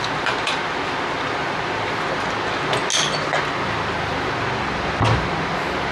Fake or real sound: real